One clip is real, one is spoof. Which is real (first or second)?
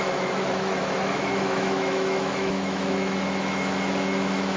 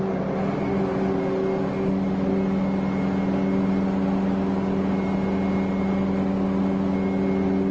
second